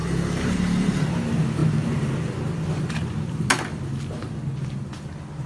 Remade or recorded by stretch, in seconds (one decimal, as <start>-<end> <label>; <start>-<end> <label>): 0.0-0.9 remade; 0.9-5.5 recorded